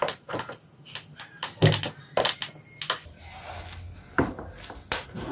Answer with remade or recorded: recorded